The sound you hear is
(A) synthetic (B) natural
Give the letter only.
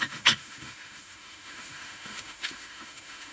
A